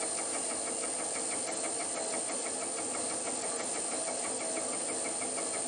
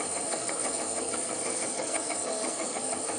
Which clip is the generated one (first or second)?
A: second